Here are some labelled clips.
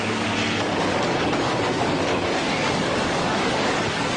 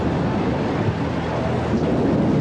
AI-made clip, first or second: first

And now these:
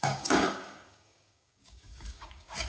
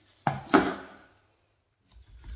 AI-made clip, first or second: first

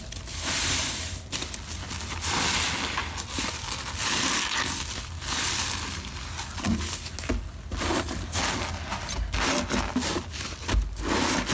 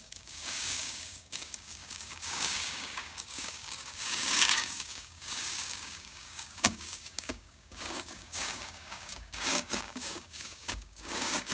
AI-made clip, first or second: second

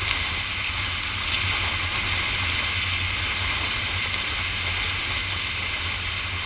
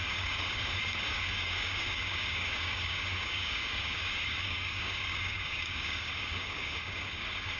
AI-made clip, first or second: second